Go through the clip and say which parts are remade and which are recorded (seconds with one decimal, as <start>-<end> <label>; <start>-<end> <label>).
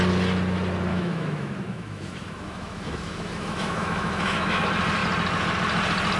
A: 0.0-0.9 recorded; 0.9-4.6 remade; 4.6-6.2 recorded